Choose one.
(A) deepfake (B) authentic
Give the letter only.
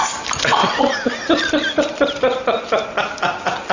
B